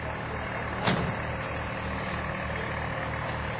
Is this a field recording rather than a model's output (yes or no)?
yes